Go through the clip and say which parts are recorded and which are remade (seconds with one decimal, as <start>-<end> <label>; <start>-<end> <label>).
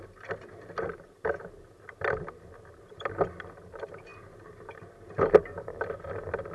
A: 0.0-6.5 recorded